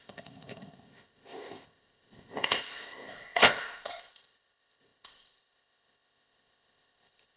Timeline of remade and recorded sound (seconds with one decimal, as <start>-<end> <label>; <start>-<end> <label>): 0.0-7.4 remade